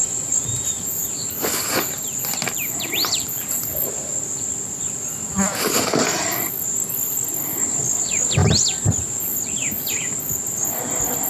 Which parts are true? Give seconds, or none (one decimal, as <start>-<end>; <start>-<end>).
0.0-0.4; 3.5-11.3